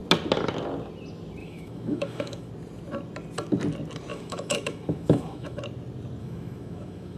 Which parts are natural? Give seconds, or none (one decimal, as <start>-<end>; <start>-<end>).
0.0-1.4; 2.5-4.1; 5.6-6.2